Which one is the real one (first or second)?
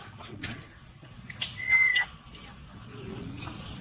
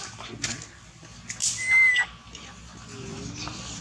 second